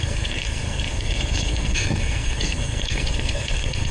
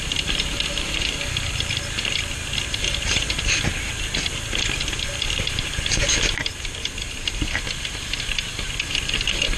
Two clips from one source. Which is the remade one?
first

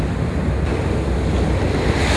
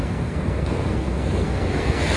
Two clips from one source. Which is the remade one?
second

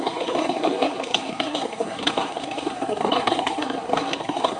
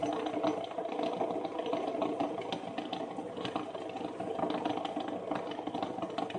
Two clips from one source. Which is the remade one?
first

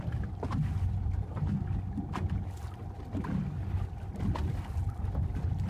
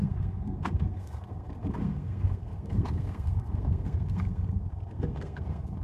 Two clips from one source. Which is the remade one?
second